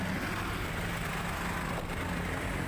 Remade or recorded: recorded